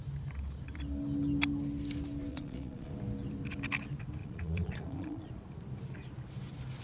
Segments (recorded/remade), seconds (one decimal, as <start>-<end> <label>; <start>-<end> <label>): 0.0-2.3 recorded; 2.3-2.9 remade; 2.9-4.2 recorded; 4.2-5.3 remade; 5.3-6.8 recorded